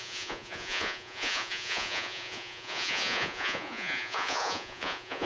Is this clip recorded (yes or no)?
no